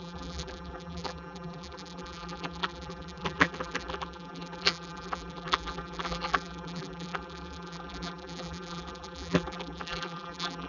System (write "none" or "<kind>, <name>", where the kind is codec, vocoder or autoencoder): vocoder, BigVGAN v2